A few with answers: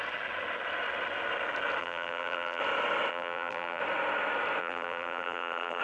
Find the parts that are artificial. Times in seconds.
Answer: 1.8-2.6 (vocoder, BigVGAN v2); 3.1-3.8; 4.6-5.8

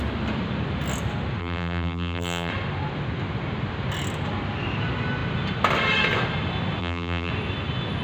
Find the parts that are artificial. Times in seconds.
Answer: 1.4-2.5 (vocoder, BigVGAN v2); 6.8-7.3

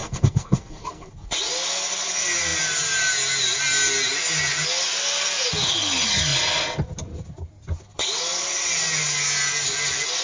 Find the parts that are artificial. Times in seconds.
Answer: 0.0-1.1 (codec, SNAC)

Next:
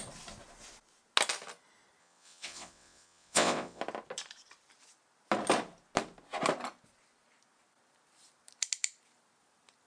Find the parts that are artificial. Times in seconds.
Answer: 2.0-3.8 (vocoder, WaveNeXt)

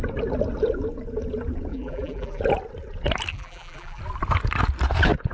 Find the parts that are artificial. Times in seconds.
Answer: 1.7-2.4 (vocoder, BigVGAN v2); 3.3-4.0